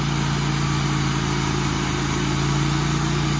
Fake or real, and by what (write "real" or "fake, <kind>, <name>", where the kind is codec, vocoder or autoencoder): real